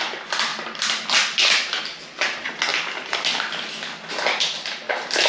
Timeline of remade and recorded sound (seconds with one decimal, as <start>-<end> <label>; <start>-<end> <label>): 0.0-0.5 recorded; 0.5-2.3 remade; 2.3-5.3 recorded